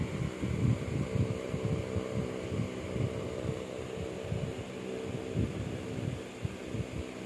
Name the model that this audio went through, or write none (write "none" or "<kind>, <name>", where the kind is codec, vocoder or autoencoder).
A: none